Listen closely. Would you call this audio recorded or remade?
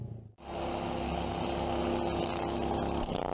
recorded